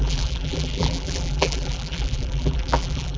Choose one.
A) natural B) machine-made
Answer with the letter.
B